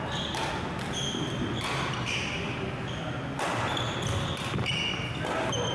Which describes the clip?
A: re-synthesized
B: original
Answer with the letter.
B